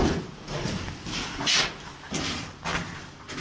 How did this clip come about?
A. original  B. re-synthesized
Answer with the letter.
A